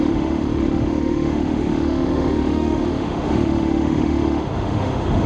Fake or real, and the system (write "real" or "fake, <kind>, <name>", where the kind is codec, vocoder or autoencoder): fake, autoencoder, DAC-VAE